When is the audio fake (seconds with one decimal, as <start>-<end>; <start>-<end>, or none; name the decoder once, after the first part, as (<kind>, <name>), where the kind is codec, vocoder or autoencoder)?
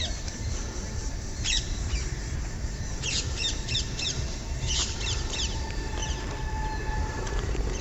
0.0-6.0 (vocoder, BigVGAN v2); 6.9-7.8